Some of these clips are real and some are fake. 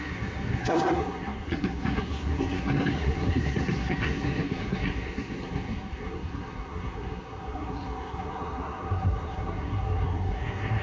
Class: fake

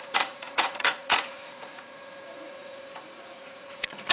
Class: fake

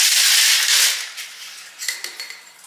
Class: real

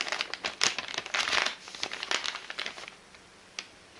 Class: real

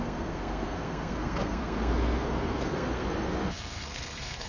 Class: fake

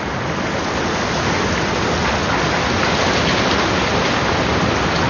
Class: real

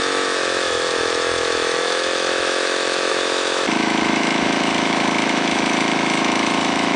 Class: fake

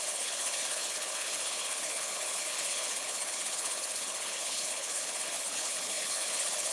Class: fake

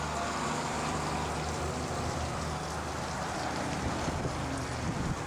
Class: real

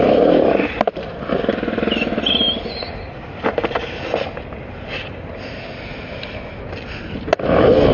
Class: real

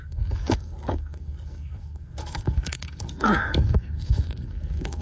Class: fake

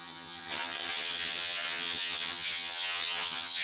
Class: fake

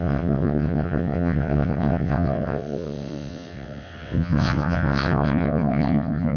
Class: fake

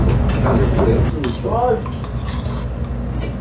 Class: real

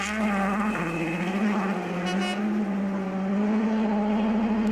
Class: real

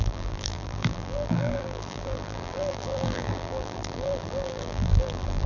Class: fake